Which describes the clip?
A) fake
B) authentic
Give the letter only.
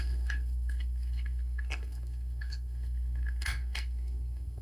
A